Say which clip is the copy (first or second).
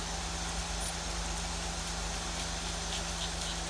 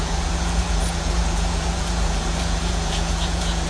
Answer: second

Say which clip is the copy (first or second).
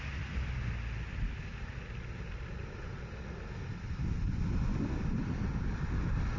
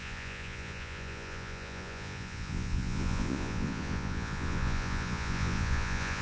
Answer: second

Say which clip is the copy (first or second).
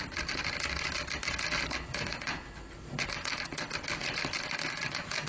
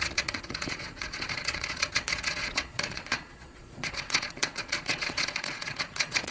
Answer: second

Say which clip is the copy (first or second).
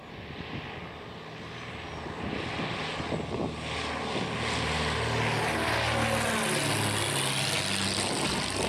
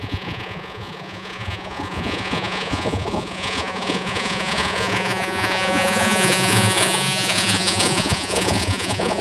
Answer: second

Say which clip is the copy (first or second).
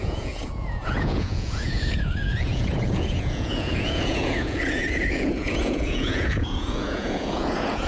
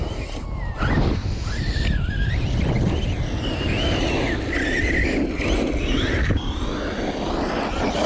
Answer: first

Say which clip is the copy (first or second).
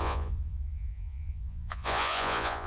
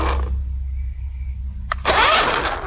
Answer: first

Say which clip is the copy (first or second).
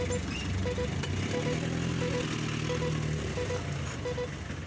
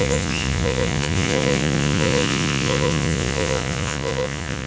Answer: second